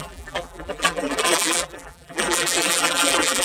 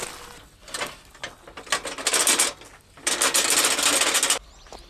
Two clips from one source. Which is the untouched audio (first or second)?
second